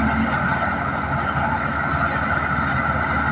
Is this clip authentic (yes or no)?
yes